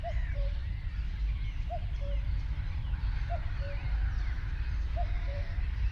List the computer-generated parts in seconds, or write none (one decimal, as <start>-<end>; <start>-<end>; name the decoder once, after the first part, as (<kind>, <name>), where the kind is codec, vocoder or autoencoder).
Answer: 0.0-0.6 (vocoder, BigVGAN v2); 1.1-5.9